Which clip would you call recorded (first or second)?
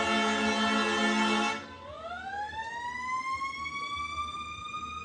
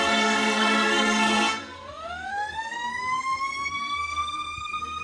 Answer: first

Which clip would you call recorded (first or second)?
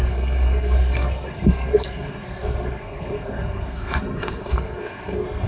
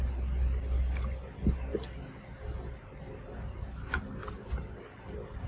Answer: second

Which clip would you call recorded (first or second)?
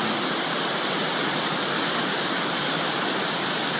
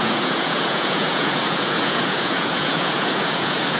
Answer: first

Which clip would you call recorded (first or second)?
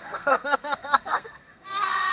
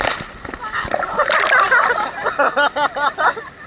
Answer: second